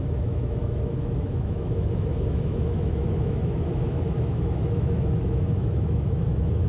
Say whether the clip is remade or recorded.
remade